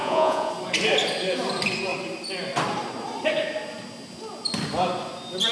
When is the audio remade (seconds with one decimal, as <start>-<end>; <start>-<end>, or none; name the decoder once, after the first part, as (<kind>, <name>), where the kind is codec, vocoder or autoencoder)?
0.0-0.5 (vocoder, Vocos)